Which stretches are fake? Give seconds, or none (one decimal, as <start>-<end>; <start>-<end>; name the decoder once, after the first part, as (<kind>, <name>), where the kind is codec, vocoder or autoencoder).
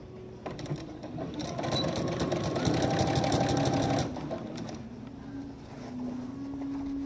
none